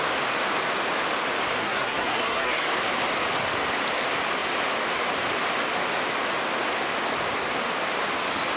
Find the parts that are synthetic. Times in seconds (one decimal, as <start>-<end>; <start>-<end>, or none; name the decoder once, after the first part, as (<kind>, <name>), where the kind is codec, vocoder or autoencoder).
1.6-2.7 (codec, SNAC)